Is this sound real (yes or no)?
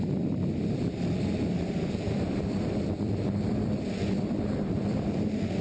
no